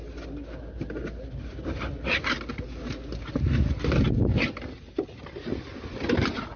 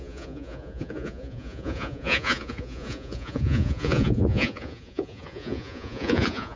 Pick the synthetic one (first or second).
second